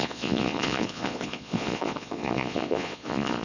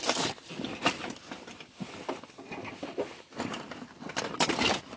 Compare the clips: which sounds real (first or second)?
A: second